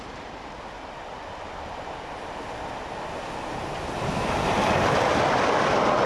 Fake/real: real